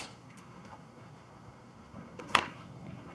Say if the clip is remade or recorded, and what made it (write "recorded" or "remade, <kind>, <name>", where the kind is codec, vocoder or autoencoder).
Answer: remade, codec, SNAC